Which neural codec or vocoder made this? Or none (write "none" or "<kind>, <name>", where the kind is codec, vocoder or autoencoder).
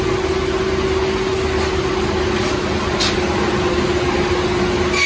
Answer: none